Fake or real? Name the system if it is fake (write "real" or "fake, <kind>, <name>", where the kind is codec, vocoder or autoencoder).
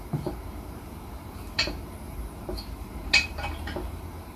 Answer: fake, vocoder, BigVGAN v2